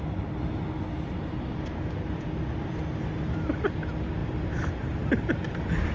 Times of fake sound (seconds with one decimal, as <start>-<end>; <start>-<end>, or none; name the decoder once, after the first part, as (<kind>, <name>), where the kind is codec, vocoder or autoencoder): none